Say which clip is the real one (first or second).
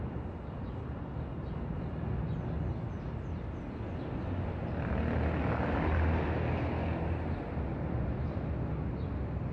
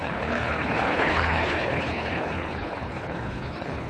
first